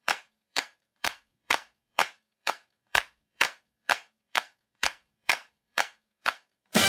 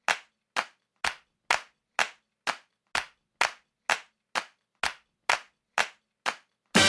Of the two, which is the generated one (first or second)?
first